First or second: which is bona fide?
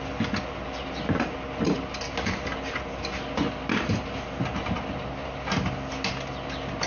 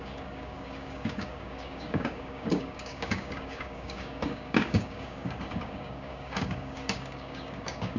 first